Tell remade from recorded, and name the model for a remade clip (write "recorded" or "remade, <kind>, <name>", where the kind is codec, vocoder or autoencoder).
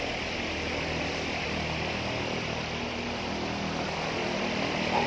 recorded